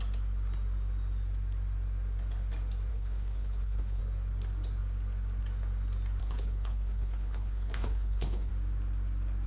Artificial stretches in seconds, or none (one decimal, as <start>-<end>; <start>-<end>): 2.9-4.0; 6.2-8.5